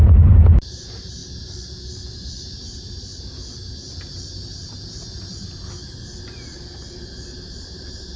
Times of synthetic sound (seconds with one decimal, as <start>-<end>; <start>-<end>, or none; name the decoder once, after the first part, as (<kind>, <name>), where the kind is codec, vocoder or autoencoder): 0.0-1.2 (vocoder, BigVGAN v2); 2.5-3.1; 7.5-8.2